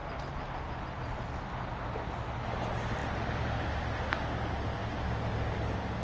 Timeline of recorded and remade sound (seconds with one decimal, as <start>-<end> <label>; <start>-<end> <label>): 0.0-6.0 recorded